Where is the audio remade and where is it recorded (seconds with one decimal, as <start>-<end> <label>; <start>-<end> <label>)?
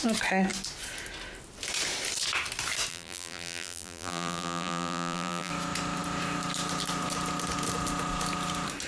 0.0-2.9 recorded; 2.9-5.5 remade; 5.5-8.9 recorded